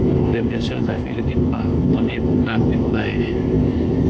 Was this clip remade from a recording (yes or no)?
yes